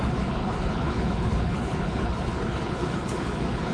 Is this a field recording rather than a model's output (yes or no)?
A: no